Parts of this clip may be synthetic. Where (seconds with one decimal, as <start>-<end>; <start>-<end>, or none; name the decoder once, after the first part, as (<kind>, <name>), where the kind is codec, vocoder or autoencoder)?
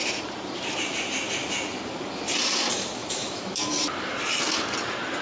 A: 0.0-0.6 (vocoder, BigVGAN v2); 3.0-4.1